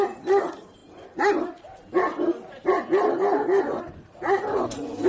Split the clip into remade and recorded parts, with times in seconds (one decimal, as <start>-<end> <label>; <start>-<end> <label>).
0.0-5.1 recorded